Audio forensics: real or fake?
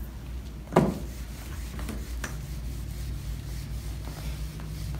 real